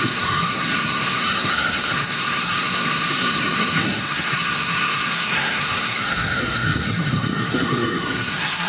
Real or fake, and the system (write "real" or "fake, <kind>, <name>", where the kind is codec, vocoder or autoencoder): fake, codec, SNAC